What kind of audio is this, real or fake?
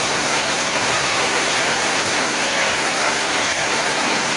fake